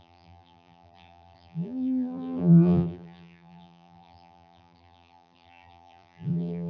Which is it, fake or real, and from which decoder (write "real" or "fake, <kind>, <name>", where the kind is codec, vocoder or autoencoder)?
fake, vocoder, BigVGAN v2